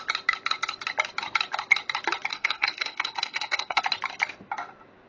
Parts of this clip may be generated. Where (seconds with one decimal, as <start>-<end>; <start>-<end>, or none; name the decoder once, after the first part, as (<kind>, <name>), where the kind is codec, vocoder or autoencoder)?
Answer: 2.3-3.8 (codec, SNAC)